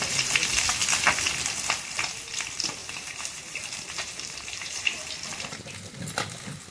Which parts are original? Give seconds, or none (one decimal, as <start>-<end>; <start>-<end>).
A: 0.0-2.8; 5.0-6.7